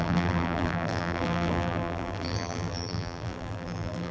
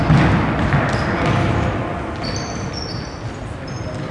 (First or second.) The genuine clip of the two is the second